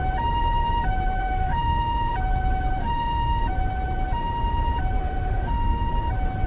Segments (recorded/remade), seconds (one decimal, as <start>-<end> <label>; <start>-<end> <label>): 0.0-1.2 recorded; 1.2-2.1 remade; 2.1-2.8 recorded; 2.8-3.4 remade; 3.4-5.0 recorded; 5.0-5.9 remade; 5.9-6.5 recorded